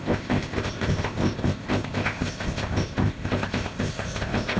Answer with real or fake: fake